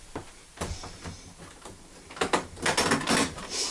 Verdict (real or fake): real